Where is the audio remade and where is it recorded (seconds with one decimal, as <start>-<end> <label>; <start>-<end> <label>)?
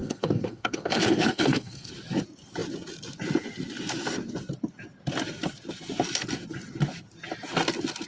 0.0-1.9 remade; 1.9-8.1 recorded